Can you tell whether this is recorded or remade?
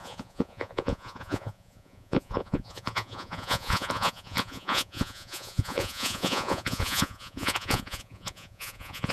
remade